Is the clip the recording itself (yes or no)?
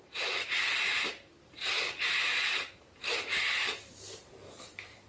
no